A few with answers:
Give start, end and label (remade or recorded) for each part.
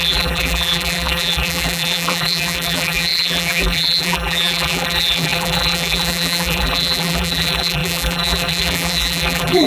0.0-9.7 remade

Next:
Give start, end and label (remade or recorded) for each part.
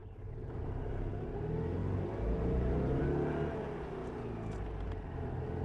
0.0-1.1 remade; 1.1-1.8 recorded; 1.8-3.0 remade; 3.0-5.6 recorded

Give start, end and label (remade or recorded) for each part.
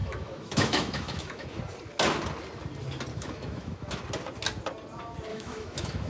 0.0-1.6 remade; 1.6-3.1 recorded; 3.1-4.0 remade; 4.0-5.3 recorded; 5.3-6.1 remade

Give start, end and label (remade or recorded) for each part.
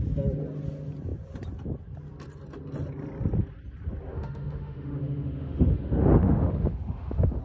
0.0-4.1 recorded; 4.1-7.4 remade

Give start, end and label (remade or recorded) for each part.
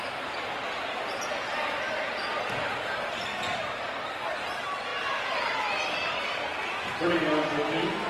0.0-3.3 recorded; 3.3-4.1 remade; 4.1-8.1 recorded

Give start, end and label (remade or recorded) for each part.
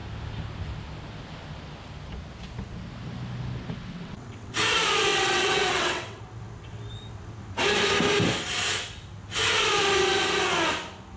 0.0-3.8 recorded; 3.8-4.5 remade; 4.5-5.1 recorded; 5.1-6.2 remade; 6.2-11.2 recorded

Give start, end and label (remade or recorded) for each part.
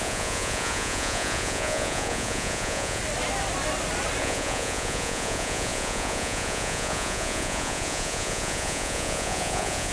0.0-3.0 remade; 3.0-4.2 recorded; 4.2-9.9 remade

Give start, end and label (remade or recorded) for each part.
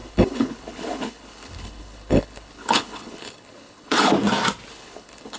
0.0-4.1 remade; 4.1-4.7 recorded; 4.7-5.4 remade